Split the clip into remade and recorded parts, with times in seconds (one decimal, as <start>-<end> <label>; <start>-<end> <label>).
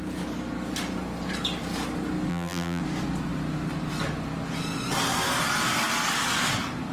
0.0-2.3 recorded; 2.3-2.8 remade; 2.8-6.9 recorded